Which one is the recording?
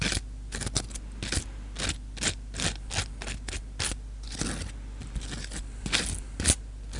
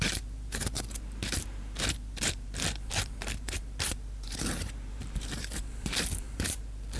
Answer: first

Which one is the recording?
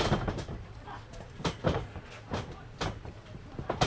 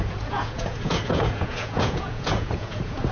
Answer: first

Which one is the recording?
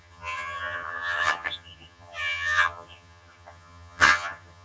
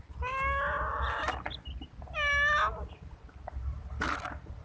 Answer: second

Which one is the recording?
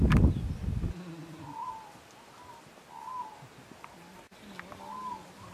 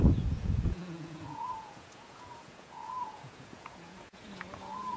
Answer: first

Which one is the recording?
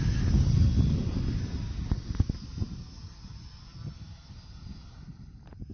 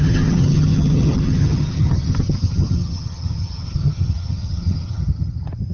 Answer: first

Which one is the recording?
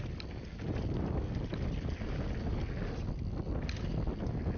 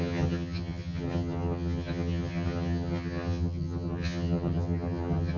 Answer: first